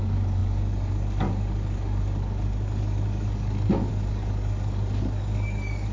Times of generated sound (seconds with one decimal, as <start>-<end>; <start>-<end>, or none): 0.0-5.9